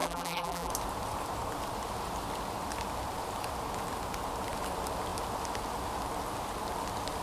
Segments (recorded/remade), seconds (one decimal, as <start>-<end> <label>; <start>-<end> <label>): 0.0-0.7 remade; 0.7-7.2 recorded